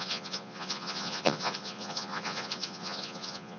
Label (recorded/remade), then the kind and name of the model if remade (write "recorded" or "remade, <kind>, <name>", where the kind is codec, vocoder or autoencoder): remade, vocoder, Vocos